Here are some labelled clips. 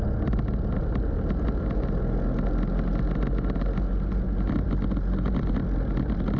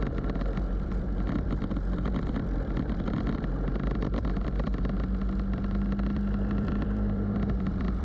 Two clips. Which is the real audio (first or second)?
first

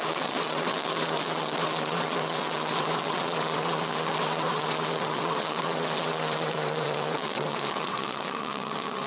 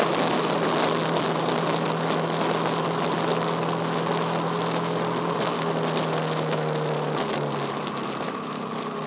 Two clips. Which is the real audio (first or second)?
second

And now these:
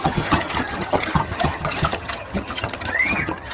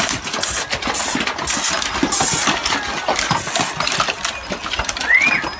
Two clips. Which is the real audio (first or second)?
second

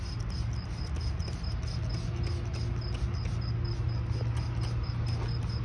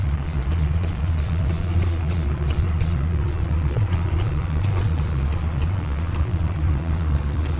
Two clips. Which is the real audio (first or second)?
first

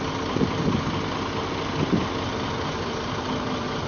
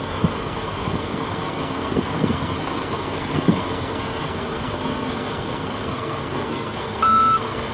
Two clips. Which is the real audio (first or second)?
first